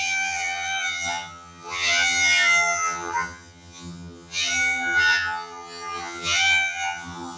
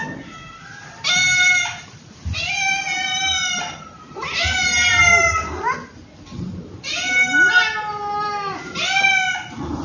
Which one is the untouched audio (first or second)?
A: second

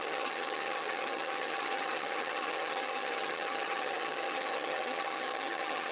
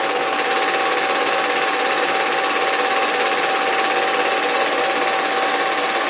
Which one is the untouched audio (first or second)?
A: second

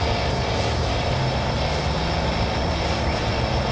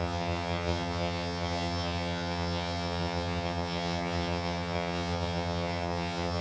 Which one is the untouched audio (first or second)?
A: first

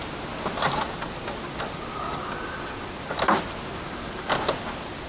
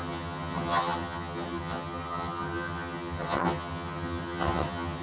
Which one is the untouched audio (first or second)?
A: first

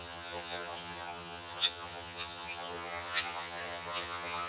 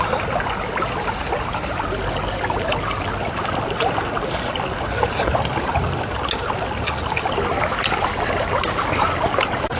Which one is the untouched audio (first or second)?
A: second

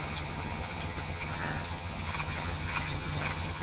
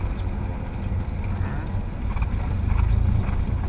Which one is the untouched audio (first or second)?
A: second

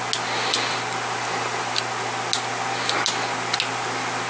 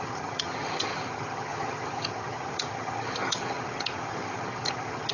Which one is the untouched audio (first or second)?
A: first